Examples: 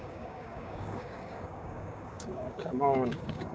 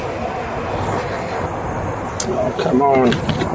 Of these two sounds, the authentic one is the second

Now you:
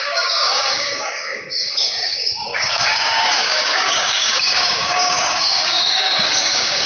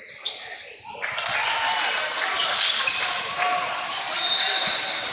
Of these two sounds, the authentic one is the second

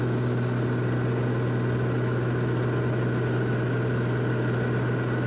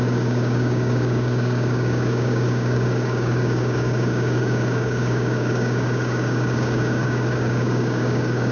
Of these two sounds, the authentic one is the first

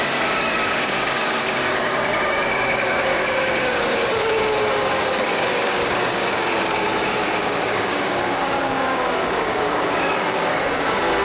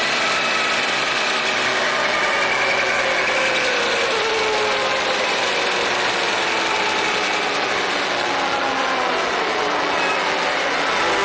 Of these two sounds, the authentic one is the second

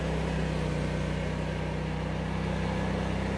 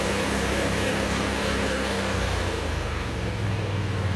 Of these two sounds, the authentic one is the first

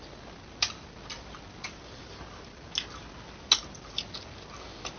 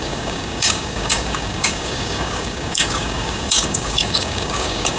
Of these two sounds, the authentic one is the first